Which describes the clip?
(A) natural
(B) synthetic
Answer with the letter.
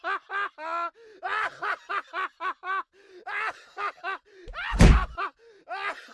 A